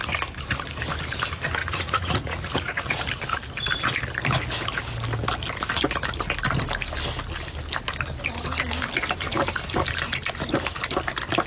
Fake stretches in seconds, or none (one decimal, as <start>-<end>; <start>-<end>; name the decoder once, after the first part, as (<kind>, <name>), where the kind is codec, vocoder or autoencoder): 1.6-3.0 (vocoder, Vocos)